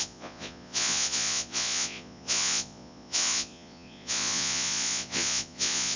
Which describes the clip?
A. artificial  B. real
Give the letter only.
A